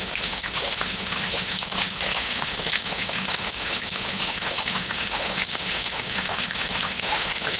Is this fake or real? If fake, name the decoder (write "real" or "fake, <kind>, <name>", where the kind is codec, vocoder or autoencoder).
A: fake, autoencoder, DAC-VAE